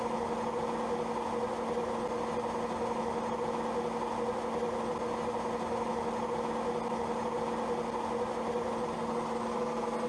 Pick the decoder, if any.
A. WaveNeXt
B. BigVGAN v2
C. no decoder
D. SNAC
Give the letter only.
C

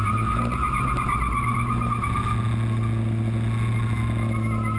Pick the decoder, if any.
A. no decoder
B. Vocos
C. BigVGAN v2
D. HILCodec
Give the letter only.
A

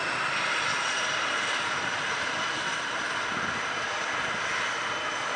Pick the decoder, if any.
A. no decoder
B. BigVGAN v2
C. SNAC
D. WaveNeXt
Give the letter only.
A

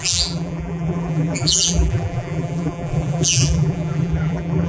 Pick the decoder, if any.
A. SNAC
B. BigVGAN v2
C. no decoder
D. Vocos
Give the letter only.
B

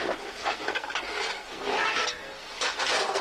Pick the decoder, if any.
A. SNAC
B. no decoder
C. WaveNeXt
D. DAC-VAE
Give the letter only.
A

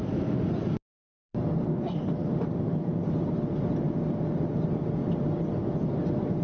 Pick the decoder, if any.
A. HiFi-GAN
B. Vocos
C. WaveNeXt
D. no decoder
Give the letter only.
D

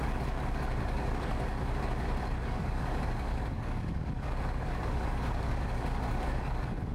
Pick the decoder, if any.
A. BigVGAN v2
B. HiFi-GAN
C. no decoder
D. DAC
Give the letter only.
D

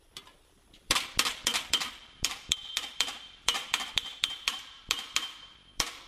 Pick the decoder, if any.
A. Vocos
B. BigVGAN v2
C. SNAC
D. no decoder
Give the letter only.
B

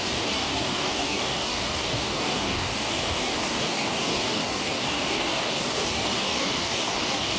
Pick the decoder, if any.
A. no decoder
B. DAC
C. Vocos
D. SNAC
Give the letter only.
B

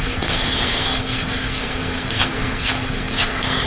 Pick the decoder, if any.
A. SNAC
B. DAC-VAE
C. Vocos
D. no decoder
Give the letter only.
A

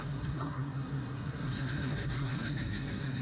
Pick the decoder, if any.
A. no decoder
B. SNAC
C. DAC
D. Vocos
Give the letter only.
B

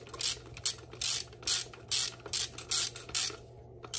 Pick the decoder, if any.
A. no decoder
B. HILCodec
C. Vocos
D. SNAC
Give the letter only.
A